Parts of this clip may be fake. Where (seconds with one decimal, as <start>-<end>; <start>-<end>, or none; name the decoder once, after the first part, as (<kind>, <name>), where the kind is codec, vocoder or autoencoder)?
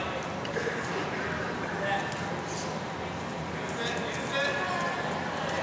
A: none